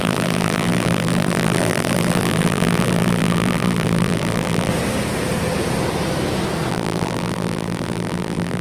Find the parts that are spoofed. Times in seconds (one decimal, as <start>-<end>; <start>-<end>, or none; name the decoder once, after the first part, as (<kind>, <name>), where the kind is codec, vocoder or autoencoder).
0.0-4.7 (vocoder, BigVGAN v2); 6.7-8.6